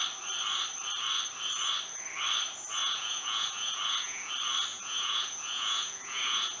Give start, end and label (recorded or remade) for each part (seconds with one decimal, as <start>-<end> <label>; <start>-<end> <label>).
0.0-2.8 recorded; 2.8-4.3 remade; 4.3-4.7 recorded; 4.7-6.6 remade